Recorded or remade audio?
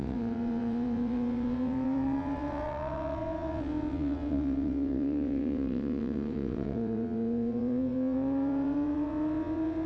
remade